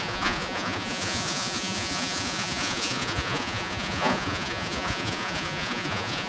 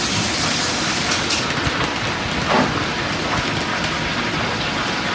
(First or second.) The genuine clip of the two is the second